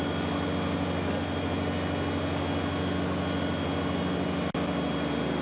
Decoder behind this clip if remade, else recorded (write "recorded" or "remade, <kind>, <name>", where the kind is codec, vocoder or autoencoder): recorded